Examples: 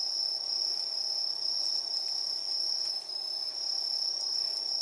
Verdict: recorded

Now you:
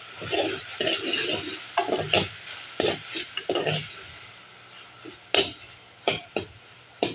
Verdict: recorded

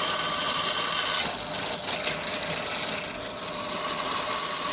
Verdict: recorded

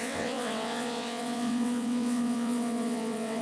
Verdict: remade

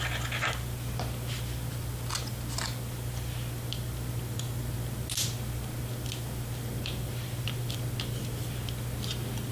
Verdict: recorded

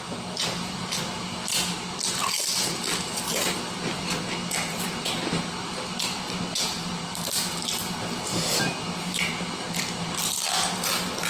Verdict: recorded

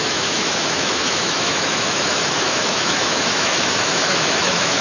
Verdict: remade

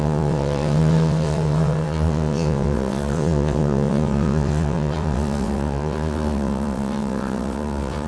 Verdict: remade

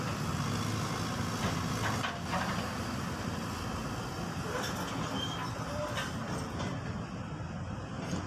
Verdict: recorded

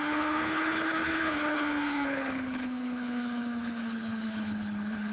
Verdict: remade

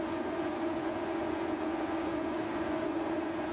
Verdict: remade